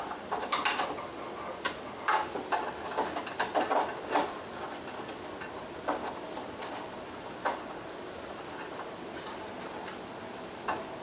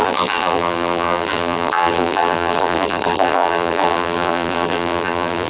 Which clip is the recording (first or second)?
first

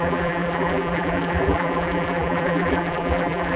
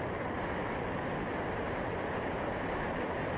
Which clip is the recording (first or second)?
second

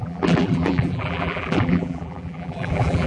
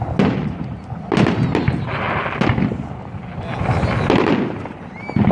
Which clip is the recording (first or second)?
second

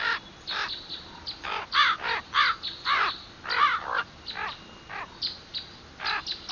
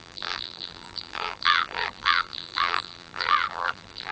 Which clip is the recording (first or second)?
first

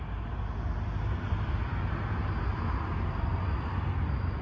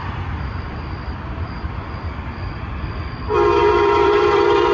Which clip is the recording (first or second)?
first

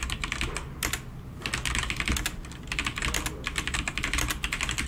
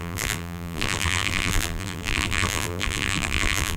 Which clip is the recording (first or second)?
first